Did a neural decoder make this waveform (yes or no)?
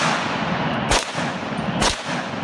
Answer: yes